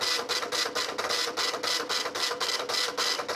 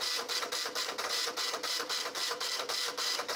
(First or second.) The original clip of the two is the first